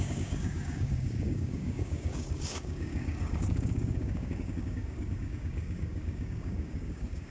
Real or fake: fake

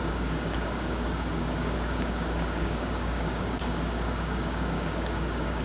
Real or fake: fake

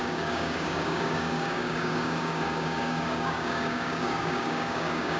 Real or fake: fake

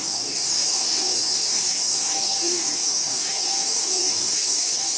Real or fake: fake